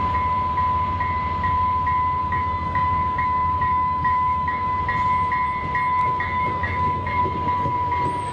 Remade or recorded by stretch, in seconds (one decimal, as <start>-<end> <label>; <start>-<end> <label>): 0.0-2.2 recorded; 2.2-4.8 remade; 4.8-6.0 recorded; 6.0-7.2 remade; 7.2-8.3 recorded